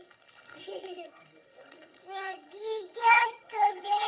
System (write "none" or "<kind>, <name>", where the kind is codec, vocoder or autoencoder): codec, HILCodec